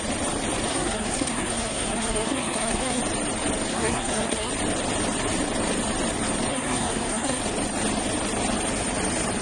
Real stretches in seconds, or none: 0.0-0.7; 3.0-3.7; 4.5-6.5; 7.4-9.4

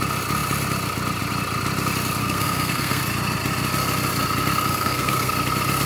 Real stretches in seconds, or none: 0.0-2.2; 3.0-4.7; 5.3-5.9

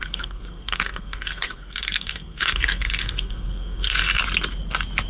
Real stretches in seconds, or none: 4.2-5.1

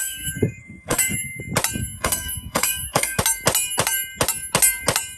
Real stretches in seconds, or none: 1.4-1.8; 3.2-5.2

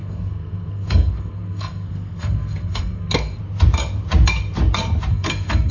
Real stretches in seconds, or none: 3.4-5.1